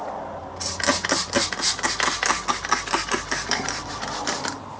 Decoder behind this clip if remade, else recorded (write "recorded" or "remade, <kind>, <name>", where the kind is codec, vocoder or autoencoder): recorded